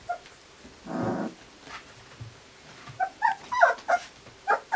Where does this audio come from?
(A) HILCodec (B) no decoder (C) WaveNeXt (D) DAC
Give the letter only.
B